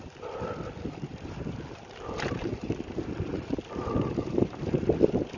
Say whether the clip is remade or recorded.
recorded